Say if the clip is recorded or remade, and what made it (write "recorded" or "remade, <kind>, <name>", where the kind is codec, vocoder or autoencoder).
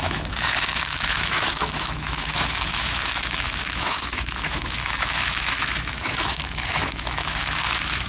remade, autoencoder, DAC-VAE